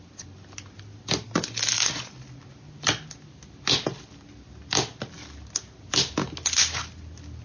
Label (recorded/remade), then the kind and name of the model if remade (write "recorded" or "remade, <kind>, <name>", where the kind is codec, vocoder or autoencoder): recorded